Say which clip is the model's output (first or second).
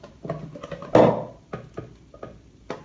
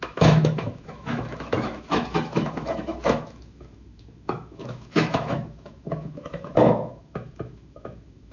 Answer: second